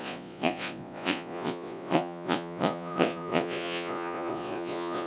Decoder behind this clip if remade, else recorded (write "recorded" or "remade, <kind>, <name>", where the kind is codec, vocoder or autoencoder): remade, vocoder, Vocos